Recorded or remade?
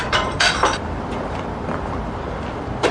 remade